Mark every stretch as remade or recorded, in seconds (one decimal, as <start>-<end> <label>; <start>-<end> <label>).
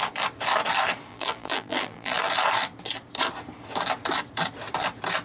0.0-1.1 recorded; 1.1-2.3 remade; 2.3-5.2 recorded